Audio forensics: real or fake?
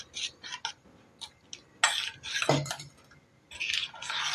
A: real